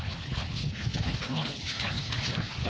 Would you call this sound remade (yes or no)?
yes